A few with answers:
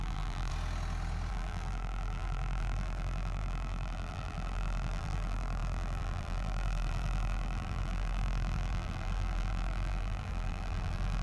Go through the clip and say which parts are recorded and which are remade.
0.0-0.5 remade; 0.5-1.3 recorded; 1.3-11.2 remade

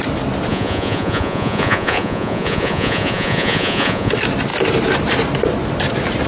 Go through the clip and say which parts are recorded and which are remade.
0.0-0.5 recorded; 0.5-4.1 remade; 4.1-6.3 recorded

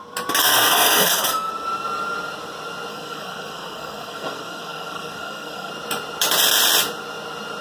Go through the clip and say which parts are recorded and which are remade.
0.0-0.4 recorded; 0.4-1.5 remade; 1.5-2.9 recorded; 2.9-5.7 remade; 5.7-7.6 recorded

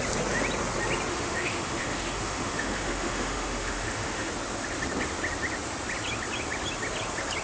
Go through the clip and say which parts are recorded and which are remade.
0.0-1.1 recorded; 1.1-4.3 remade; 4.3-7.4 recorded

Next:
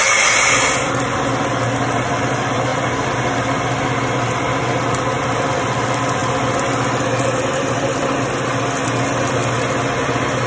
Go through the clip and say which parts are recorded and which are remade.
0.0-10.5 recorded